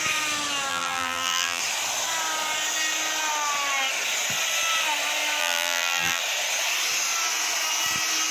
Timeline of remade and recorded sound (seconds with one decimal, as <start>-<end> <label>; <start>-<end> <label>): 0.0-0.7 recorded; 0.7-1.6 remade; 1.6-5.4 recorded; 5.4-6.2 remade; 6.2-8.3 recorded